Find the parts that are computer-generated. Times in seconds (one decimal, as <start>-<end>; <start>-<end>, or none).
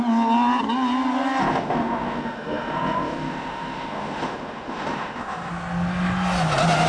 1.4-5.5